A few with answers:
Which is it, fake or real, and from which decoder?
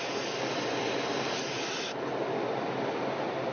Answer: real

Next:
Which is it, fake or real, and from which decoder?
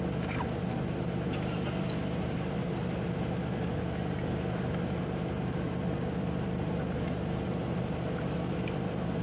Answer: real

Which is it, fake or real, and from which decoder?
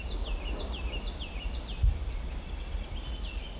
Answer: real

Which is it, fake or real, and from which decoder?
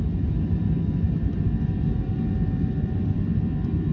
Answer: real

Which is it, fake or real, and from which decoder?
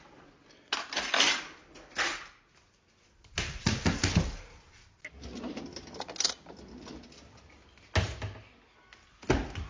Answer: real